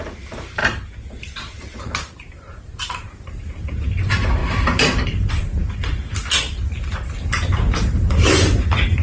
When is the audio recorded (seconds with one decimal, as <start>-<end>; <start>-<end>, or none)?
4.4-5.3; 6.2-6.9